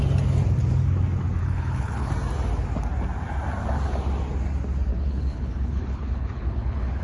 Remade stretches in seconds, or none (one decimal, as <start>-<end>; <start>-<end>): 1.4-2.1; 4.9-7.0